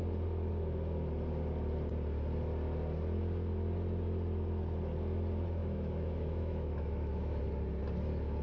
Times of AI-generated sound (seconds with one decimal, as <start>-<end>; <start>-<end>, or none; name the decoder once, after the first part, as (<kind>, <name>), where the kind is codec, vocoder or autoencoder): 5.6-7.4 (autoencoder, DAC-VAE)